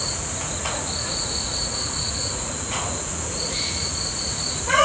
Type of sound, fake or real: fake